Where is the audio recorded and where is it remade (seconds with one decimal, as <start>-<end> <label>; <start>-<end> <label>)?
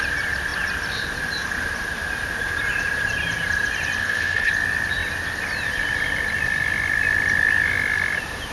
0.0-4.0 recorded; 4.0-4.5 remade; 4.5-8.5 recorded